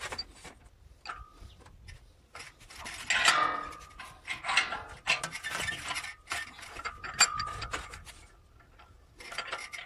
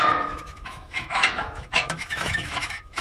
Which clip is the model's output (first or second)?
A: second